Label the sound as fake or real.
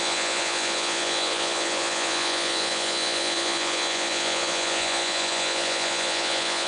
fake